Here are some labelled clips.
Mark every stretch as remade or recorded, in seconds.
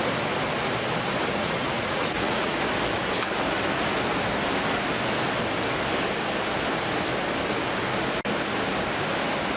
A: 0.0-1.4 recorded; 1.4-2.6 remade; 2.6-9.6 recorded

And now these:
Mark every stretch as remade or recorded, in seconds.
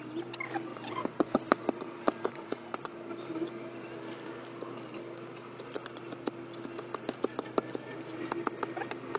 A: 0.0-0.7 recorded; 0.7-1.7 remade; 1.7-9.2 recorded